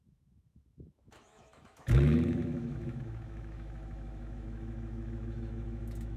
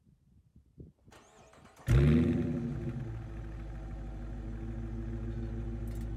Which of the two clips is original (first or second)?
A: second